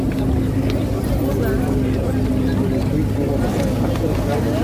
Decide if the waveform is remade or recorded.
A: recorded